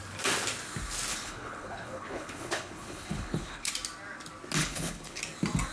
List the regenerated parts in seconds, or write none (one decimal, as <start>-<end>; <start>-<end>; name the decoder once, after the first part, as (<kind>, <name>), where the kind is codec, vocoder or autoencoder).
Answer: 1.1-3.7 (codec, HILCodec); 4.6-5.2